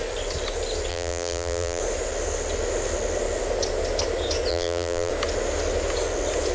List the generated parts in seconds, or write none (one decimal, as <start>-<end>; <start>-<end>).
0.9-1.8; 4.5-5.1